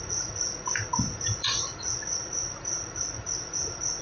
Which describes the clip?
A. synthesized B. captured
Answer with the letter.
A